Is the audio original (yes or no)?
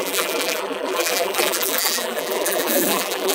no